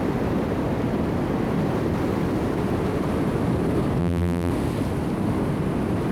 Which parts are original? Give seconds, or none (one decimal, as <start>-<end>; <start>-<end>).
0.0-4.0; 4.5-6.1